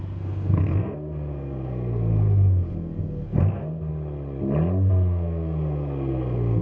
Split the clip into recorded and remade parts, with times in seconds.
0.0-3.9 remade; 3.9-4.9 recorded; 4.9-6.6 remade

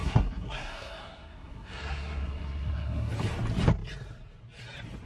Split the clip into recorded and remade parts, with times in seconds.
0.0-3.1 remade; 3.1-5.1 recorded

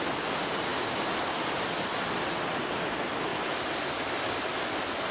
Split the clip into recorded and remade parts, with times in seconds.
0.0-5.1 recorded

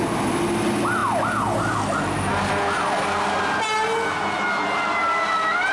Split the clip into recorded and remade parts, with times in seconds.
0.0-5.7 recorded

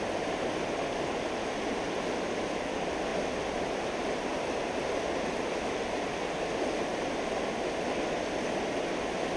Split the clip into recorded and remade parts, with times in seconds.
0.0-9.4 recorded